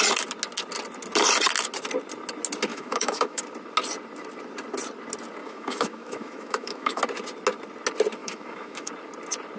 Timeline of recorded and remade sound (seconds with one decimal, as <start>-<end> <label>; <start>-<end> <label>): 0.0-2.7 recorded; 2.7-3.4 remade; 3.4-5.4 recorded; 5.4-7.0 remade; 7.0-8.2 recorded; 8.2-8.9 remade; 8.9-9.6 recorded